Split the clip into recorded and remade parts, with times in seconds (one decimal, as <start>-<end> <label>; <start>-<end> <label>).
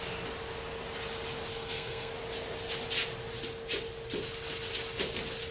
0.0-1.5 recorded; 1.5-2.1 remade; 2.1-5.5 recorded